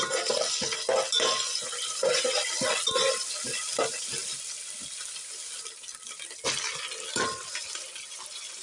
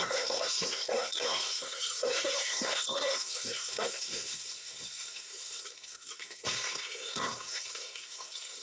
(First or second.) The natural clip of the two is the first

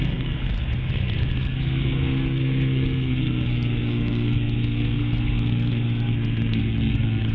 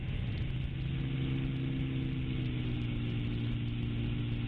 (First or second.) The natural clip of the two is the second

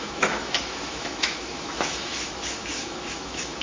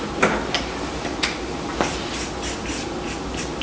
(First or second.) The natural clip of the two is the second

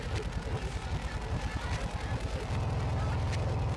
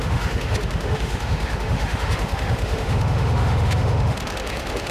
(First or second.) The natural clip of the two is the first